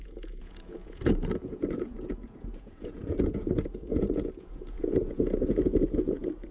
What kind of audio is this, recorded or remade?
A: remade